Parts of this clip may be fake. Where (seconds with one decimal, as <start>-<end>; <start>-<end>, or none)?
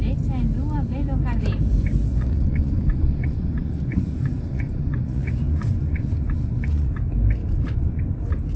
2.1-6.9; 7.4-8.0